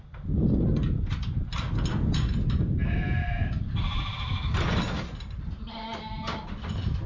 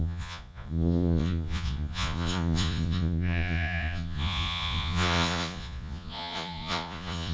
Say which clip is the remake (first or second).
second